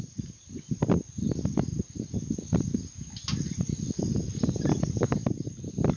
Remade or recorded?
recorded